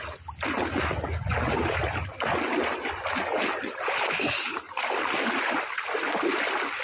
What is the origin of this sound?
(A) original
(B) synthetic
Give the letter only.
A